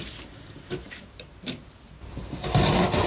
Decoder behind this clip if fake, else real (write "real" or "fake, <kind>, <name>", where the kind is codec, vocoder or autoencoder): fake, vocoder, BigVGAN v2